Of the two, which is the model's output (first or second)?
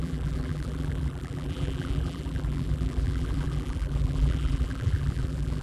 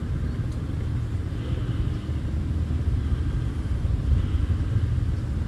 first